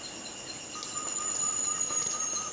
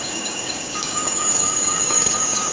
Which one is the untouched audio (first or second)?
first